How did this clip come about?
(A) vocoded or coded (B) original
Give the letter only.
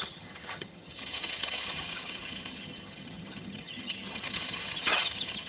A